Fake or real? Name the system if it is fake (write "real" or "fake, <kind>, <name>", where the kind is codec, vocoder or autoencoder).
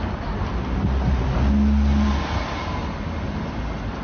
real